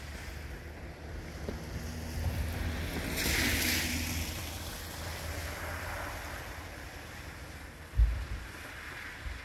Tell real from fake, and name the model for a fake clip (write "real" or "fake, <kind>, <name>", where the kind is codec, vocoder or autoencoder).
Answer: real